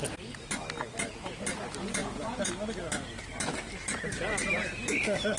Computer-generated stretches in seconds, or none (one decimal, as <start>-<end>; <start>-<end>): 2.0-2.5